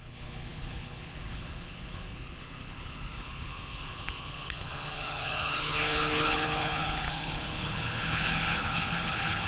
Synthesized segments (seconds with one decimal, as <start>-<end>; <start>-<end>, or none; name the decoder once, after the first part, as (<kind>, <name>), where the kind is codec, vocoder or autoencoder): 0.0-9.5 (codec, HILCodec)